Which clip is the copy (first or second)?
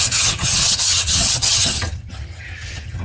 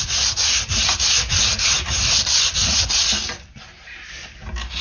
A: first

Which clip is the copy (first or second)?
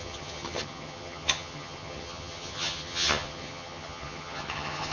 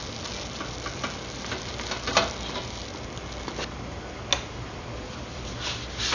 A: first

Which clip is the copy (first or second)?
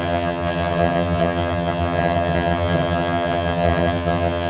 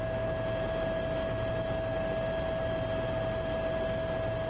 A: first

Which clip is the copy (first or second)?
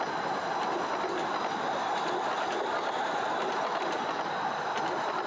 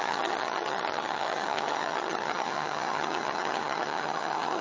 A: second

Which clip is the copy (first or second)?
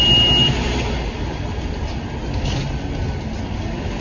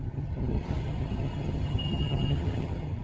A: second